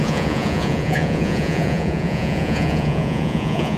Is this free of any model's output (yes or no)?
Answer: no